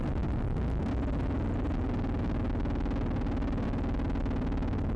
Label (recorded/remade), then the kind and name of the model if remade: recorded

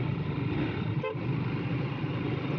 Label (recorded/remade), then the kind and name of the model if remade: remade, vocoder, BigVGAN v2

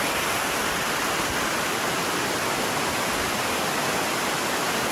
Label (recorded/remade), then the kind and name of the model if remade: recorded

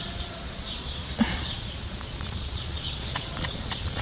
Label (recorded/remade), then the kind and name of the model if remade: remade, vocoder, Vocos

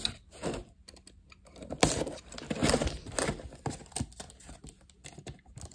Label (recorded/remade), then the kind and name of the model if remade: recorded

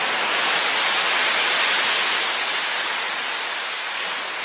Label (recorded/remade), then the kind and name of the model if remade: recorded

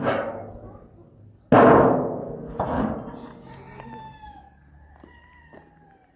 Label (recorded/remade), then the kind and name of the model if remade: recorded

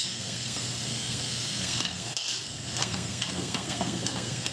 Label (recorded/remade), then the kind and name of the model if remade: remade, codec, SNAC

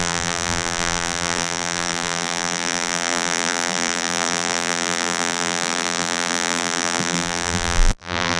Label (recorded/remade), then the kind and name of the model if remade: remade, vocoder, BigVGAN v2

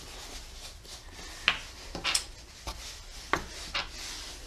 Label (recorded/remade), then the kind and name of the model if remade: recorded